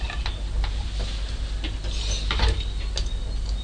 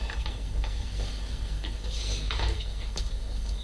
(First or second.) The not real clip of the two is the second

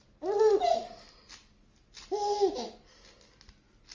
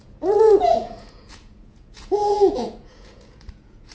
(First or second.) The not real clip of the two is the second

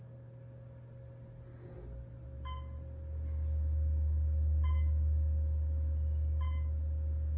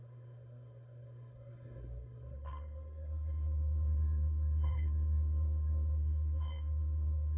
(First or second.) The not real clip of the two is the second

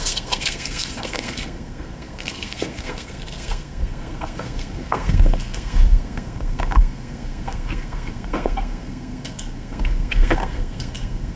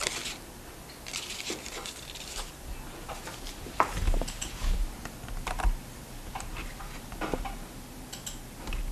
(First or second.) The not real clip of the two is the first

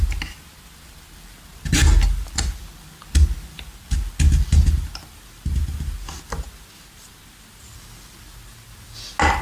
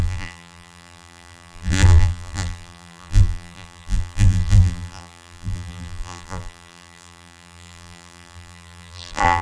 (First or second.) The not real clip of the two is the second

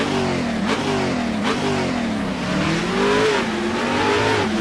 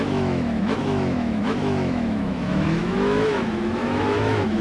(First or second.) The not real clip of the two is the second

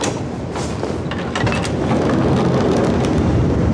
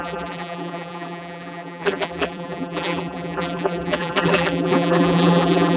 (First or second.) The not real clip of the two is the second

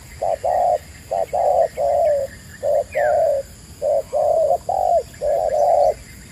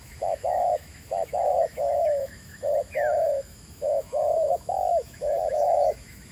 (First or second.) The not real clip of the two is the second